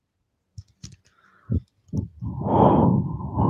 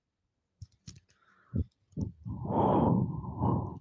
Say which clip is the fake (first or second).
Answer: second